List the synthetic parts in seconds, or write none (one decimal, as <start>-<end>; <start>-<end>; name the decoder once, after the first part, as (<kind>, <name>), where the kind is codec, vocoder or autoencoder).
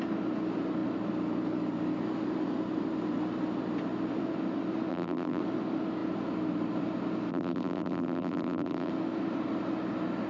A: 4.9-5.4 (vocoder, BigVGAN v2); 7.3-8.9